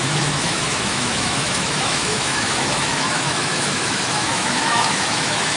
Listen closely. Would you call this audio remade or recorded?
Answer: remade